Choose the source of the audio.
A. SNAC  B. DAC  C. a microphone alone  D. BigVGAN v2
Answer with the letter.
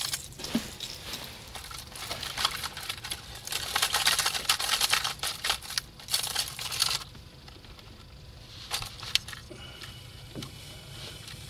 D